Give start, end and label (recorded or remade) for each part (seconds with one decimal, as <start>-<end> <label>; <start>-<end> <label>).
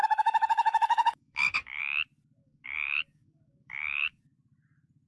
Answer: 0.0-1.8 remade; 1.8-2.4 recorded; 2.4-4.2 remade; 4.2-5.1 recorded